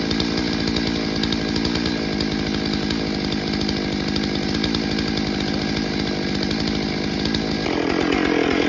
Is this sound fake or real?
real